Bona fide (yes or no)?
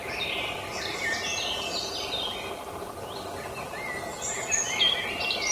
yes